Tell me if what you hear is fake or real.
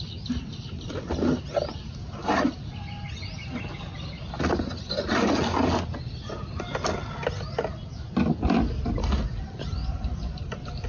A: real